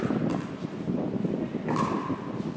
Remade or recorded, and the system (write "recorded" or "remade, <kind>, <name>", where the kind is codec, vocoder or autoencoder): recorded